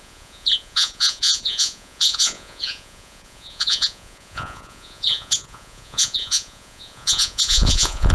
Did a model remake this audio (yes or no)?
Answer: yes